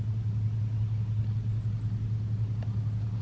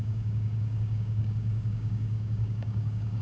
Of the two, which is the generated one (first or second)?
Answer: second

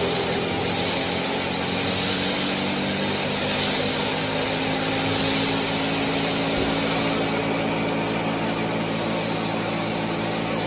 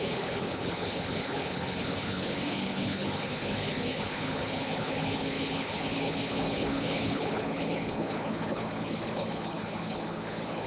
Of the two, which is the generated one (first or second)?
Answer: second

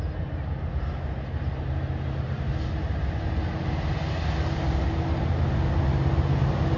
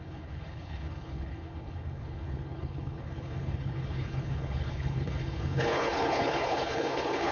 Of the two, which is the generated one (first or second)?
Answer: second